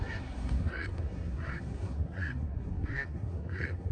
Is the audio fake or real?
fake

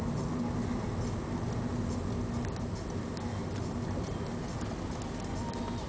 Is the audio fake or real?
real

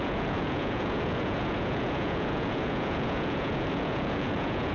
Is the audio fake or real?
fake